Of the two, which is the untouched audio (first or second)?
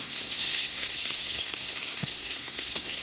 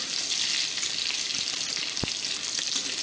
second